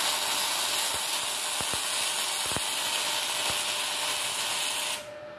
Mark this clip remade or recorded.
recorded